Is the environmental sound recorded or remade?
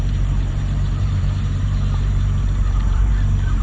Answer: remade